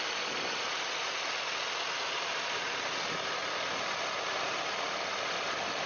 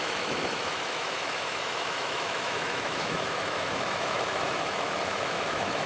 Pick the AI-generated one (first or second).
second